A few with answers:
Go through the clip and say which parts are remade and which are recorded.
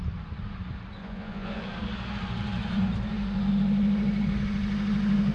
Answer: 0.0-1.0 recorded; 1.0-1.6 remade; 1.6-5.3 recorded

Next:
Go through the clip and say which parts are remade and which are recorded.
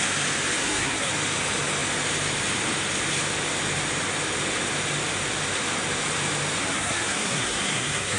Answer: 0.0-0.6 recorded; 0.6-1.1 remade; 1.1-6.6 recorded; 6.6-8.2 remade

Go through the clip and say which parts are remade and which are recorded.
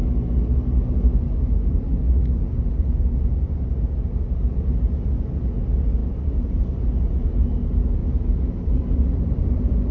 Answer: 0.0-6.0 recorded; 6.0-6.6 remade; 6.6-8.0 recorded; 8.0-9.9 remade